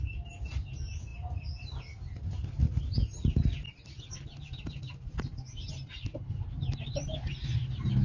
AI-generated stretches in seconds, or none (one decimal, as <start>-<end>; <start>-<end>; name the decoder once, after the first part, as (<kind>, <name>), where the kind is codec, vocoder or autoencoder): none

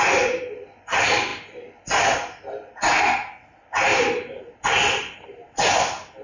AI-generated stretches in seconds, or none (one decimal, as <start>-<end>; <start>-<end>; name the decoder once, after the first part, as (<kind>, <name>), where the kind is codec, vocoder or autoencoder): 0.0-1.3 (vocoder, BigVGAN v2); 4.4-6.2

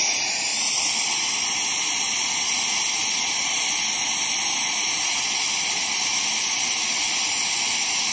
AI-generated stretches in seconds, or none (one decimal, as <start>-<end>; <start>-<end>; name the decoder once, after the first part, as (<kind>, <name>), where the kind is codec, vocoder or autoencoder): 0.5-2.0 (vocoder, BigVGAN v2); 3.0-3.7

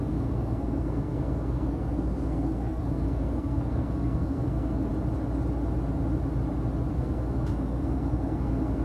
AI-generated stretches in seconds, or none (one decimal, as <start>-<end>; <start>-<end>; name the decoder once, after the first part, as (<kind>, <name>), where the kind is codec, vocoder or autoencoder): 0.0-4.9 (codec, SNAC); 6.9-8.8

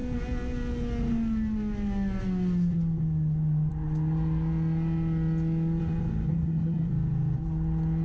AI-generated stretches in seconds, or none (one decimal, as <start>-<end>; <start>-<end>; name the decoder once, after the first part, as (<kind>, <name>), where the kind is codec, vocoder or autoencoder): 6.3-6.9 (codec, SNAC)

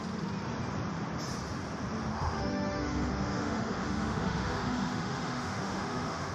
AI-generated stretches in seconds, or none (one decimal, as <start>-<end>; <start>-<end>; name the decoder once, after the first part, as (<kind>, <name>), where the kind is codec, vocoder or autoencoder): 2.1-6.3 (autoencoder, DAC-VAE)